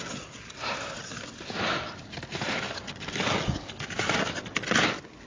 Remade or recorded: recorded